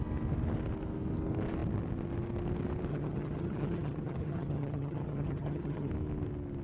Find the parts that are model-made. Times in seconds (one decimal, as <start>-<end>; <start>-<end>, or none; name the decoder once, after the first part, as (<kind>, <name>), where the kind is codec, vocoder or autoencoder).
2.9-5.9 (vocoder, HiFi-GAN)